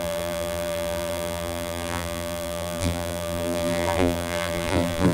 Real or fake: fake